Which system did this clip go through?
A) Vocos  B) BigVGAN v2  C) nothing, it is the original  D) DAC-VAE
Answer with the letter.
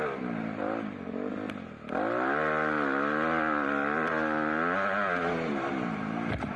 C